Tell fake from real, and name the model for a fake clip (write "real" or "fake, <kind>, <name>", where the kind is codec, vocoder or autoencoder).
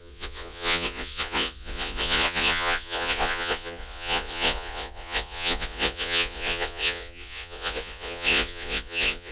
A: fake, vocoder, Vocos